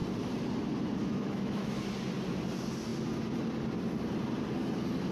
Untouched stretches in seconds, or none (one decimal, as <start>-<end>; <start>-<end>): 0.0-1.0; 1.8-5.1